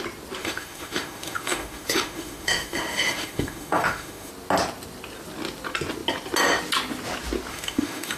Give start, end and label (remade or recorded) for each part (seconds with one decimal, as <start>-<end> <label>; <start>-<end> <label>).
0.0-0.4 recorded; 0.4-4.3 remade; 4.3-7.5 recorded; 7.5-8.2 remade